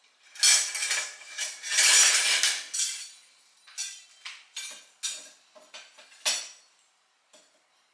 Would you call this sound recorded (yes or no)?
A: yes